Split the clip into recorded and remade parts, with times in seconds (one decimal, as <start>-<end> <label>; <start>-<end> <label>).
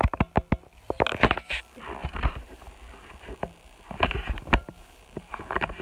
0.0-2.0 recorded; 2.0-5.8 remade